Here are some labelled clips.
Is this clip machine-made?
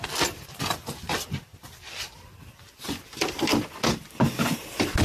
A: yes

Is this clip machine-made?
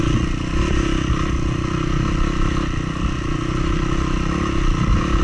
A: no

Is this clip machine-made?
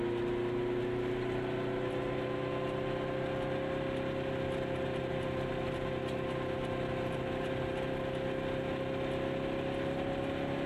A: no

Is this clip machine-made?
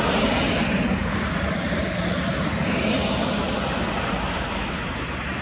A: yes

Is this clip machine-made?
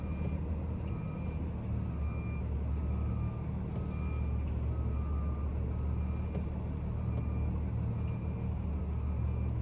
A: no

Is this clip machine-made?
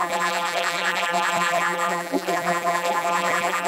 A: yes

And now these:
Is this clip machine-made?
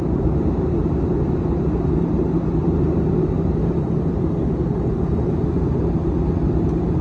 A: yes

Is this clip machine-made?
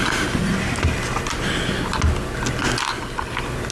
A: no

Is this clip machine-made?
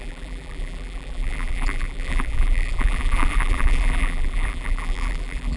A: yes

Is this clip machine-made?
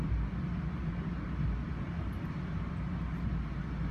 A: no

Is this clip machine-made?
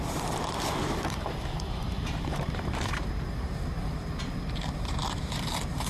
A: yes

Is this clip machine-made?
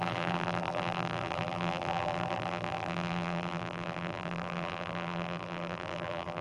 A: yes